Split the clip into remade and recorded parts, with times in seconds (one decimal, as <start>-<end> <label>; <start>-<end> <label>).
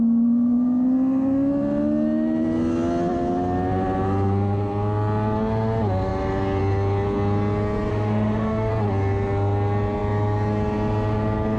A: 0.0-7.9 recorded; 7.9-8.7 remade; 8.7-11.6 recorded